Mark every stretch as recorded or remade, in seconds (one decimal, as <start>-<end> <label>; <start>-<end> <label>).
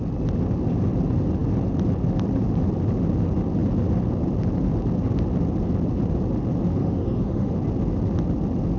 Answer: 0.0-6.8 recorded; 6.8-7.5 remade; 7.5-8.8 recorded